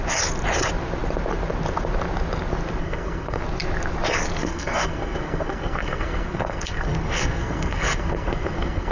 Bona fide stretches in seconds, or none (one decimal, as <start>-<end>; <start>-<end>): 0.0-2.8; 3.4-4.4